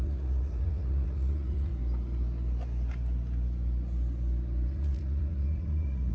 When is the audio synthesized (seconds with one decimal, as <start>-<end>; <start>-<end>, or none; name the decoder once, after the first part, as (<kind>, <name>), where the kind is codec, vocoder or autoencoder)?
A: 0.0-1.7 (vocoder, Vocos); 4.7-6.1